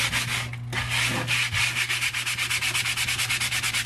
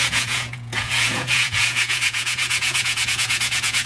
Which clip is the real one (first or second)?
first